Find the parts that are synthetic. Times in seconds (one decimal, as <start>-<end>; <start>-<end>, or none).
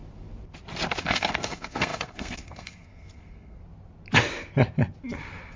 1.0-3.6